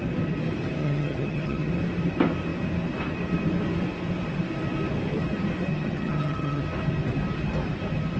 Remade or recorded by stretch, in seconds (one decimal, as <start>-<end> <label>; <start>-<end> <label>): 0.0-0.8 recorded; 0.8-1.7 remade; 1.7-5.7 recorded; 5.7-6.6 remade; 6.6-8.2 recorded